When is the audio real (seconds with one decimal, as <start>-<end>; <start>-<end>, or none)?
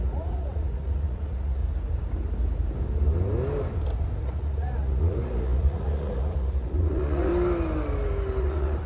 1.6-4.2; 7.3-8.4